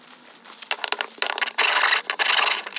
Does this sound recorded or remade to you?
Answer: recorded